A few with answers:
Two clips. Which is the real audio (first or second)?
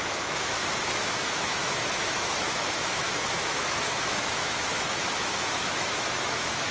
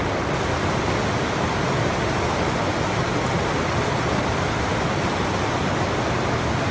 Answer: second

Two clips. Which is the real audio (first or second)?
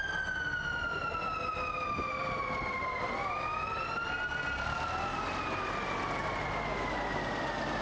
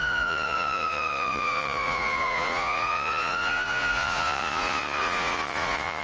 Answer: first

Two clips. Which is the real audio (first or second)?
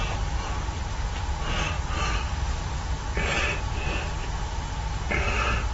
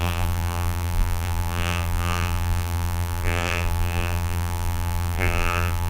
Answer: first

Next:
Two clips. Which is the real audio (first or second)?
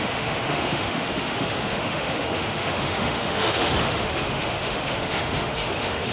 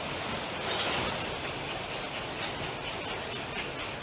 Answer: second